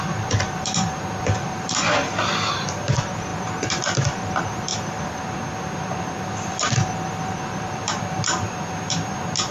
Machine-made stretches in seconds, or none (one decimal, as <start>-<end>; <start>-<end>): 0.0-3.3; 3.8-9.5